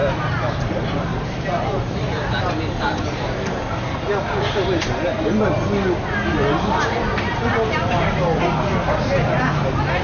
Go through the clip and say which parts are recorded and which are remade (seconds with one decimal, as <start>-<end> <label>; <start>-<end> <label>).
0.0-2.5 remade; 2.5-10.0 recorded